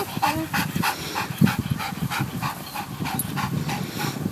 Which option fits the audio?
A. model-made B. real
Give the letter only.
B